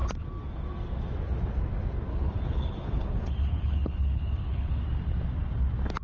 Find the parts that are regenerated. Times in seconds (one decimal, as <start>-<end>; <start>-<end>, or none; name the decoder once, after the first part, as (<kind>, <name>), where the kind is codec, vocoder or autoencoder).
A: 2.1-4.8 (codec, HILCodec)